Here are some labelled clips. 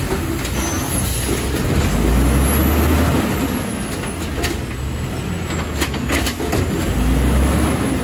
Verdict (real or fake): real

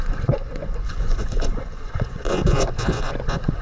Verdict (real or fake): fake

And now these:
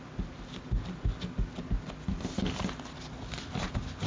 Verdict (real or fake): real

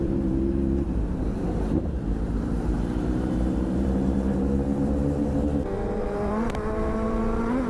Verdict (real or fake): fake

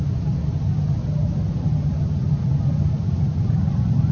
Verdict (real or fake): real